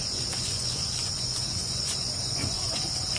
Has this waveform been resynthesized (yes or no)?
yes